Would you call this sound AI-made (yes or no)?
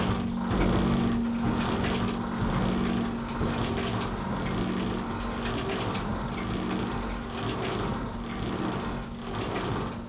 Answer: no